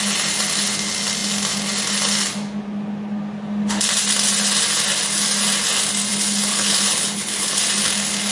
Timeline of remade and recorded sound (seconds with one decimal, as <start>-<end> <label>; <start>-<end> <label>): 0.0-6.5 recorded; 6.5-7.6 remade; 7.6-8.3 recorded